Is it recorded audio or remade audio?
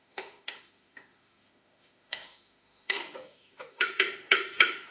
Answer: remade